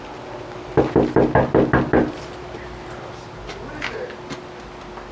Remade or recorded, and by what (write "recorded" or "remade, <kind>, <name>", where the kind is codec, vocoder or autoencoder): recorded